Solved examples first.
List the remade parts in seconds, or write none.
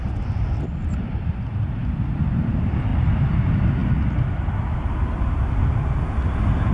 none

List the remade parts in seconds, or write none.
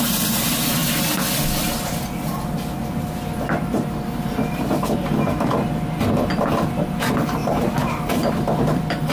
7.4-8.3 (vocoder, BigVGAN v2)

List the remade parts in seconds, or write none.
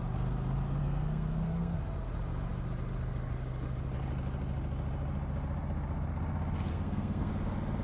0.8-1.8 (codec, SNAC); 6.7-7.3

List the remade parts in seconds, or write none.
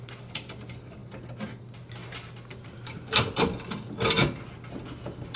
0.0-4.2 (vocoder, BigVGAN v2); 4.9-5.4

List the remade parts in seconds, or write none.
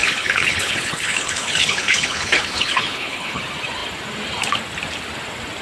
0.0-3.4 (codec, HILCodec)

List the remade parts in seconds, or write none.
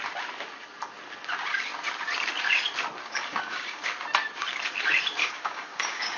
3.3-3.8 (codec, DAC); 5.2-6.2